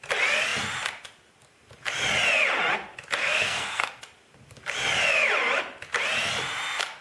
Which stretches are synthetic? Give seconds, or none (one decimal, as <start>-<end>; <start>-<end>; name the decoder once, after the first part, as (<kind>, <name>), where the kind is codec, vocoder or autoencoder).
3.2-4.0 (codec, SNAC)